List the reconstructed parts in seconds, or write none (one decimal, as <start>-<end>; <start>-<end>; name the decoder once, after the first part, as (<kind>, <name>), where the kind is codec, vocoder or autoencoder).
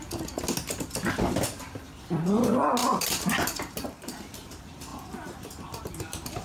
2.8-4.3 (vocoder, BigVGAN v2)